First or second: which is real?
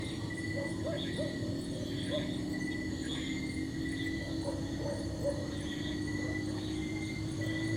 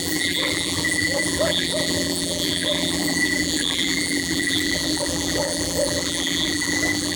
first